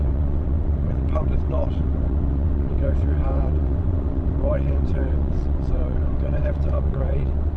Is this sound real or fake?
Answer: fake